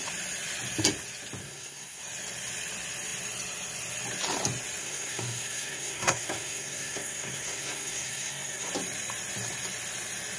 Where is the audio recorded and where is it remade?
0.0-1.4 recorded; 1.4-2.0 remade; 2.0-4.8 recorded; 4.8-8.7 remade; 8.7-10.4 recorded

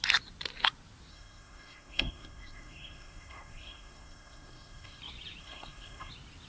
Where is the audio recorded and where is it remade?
0.0-1.1 recorded; 1.1-5.0 remade; 5.0-5.4 recorded; 5.4-6.1 remade; 6.1-6.5 recorded

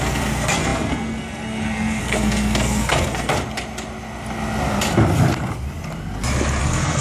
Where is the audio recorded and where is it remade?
0.0-3.3 remade; 3.3-6.6 recorded; 6.6-7.0 remade

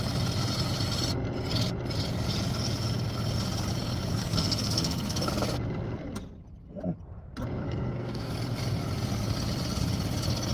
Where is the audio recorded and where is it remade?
0.0-4.2 recorded; 4.2-5.3 remade; 5.3-7.6 recorded; 7.6-8.3 remade; 8.3-10.5 recorded

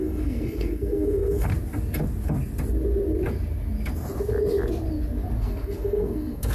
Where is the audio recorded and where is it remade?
0.0-1.5 remade; 1.5-5.4 recorded; 5.4-6.5 remade

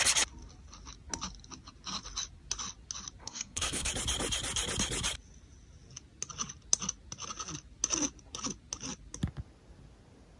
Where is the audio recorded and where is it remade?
0.0-3.2 recorded; 3.2-3.9 remade; 3.9-10.4 recorded

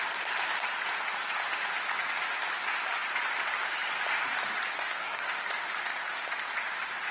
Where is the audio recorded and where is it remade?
0.0-4.8 recorded; 4.8-5.3 remade; 5.3-7.1 recorded

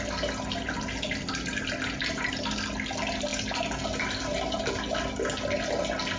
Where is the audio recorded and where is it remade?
0.0-6.2 recorded